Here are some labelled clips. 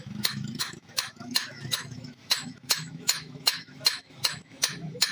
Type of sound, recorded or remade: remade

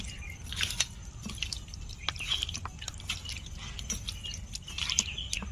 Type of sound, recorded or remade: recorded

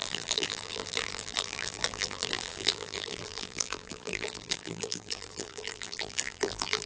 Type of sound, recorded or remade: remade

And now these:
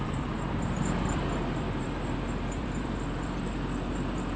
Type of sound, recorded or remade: remade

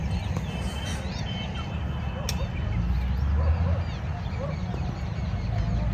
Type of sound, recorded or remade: recorded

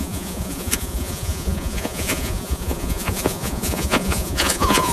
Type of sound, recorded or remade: remade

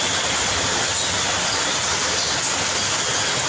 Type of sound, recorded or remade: recorded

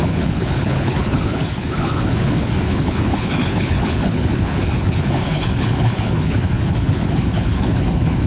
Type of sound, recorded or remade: remade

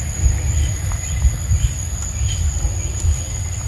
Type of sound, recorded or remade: recorded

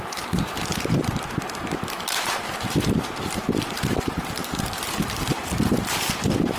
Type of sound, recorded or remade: remade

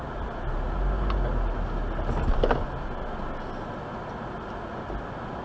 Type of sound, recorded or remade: recorded